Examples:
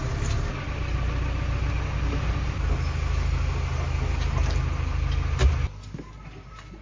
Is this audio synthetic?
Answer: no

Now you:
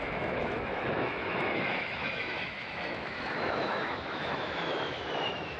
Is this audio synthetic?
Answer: yes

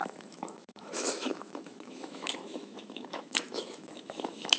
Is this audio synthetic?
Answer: yes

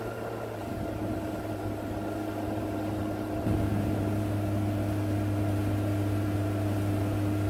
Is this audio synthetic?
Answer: no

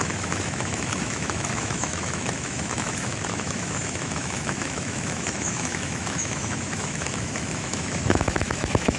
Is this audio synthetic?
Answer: yes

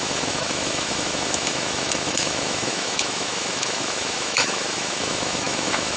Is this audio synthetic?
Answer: yes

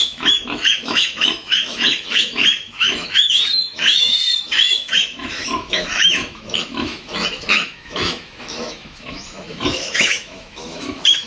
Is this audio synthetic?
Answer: yes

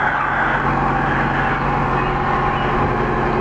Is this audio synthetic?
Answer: no